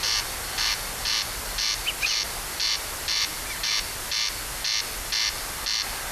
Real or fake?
real